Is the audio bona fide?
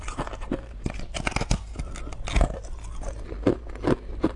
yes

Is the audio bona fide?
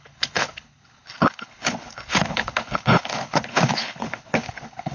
no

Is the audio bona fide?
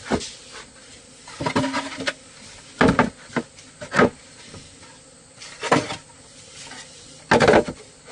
yes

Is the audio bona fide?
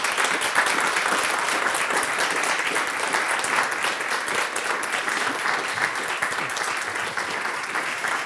yes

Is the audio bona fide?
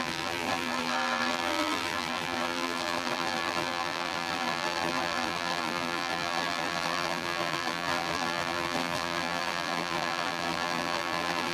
no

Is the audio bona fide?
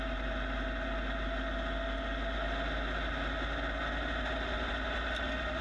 yes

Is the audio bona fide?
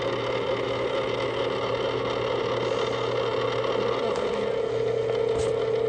yes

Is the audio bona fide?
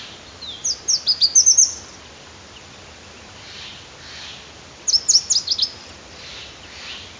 yes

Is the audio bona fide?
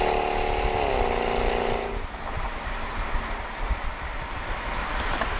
yes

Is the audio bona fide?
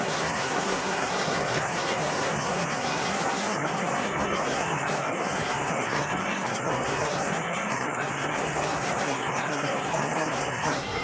no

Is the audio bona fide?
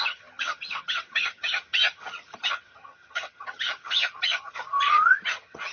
no